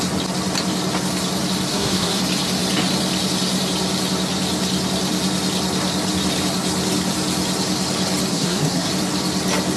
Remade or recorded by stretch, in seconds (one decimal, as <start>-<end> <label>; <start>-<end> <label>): 0.0-1.7 recorded; 1.7-2.2 remade; 2.2-8.3 recorded; 8.3-8.9 remade; 8.9-9.8 recorded